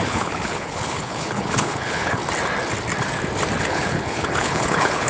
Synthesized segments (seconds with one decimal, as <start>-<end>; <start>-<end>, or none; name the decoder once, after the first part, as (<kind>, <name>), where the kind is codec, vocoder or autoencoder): 0.0-2.2 (codec, HILCodec); 3.6-5.1